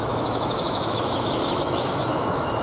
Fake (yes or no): yes